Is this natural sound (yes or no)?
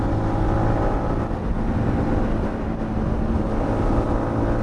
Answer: yes